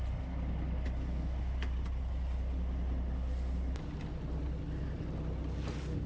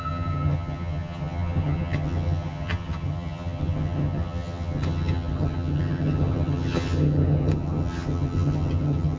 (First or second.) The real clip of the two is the first